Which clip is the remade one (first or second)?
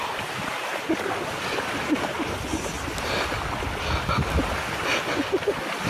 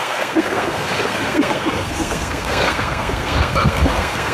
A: second